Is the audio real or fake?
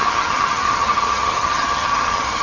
fake